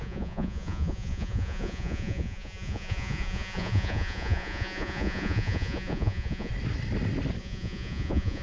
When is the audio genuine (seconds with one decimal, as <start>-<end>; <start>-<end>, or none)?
6.5-7.4